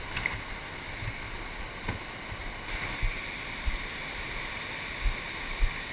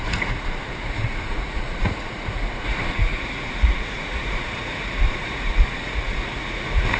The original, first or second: first